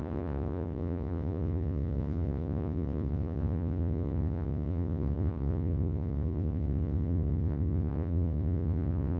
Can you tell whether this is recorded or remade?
remade